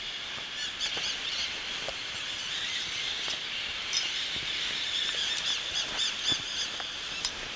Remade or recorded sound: recorded